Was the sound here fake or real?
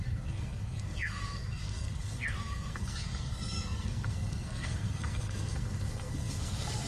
fake